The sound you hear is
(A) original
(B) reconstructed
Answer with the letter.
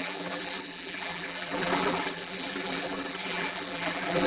B